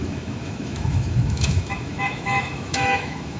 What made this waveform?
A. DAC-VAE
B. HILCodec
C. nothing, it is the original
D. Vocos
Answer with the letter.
A